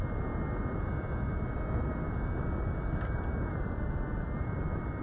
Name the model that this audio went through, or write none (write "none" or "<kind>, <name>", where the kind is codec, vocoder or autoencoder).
none